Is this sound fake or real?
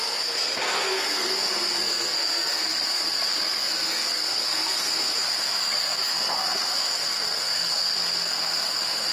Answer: fake